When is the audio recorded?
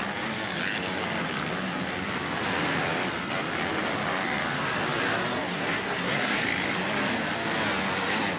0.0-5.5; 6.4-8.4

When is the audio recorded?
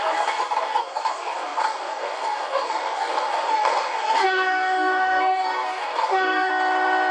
6.5-7.1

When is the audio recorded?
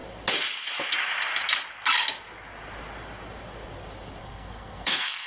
0.0-4.2